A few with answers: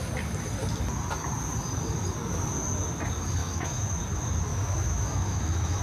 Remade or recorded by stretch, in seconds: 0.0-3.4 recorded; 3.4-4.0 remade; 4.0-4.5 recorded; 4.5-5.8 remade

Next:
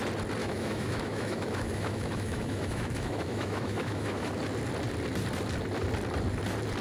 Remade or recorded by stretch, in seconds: 0.0-0.4 recorded; 0.4-4.3 remade; 4.3-6.8 recorded

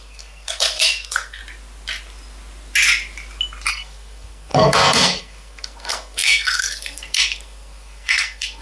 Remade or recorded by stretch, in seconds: 0.0-1.4 remade; 1.4-3.7 recorded; 3.7-8.6 remade

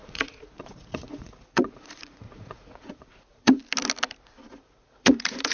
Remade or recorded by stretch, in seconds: 0.0-3.6 remade; 3.6-4.5 recorded; 4.5-5.5 remade